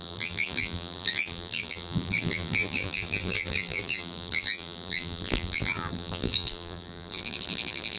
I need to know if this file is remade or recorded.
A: remade